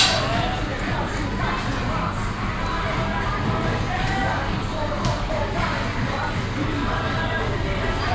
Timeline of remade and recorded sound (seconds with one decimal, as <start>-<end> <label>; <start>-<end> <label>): 0.0-8.1 recorded